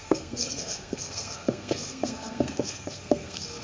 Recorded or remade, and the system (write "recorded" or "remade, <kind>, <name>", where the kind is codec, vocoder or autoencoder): remade, codec, SNAC